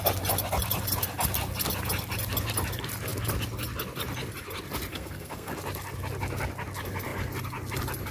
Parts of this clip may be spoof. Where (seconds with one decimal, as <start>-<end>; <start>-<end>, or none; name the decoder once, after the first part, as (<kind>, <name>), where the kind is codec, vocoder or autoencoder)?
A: 4.9-5.5 (codec, SNAC)